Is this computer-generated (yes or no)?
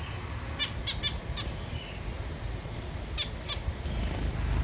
no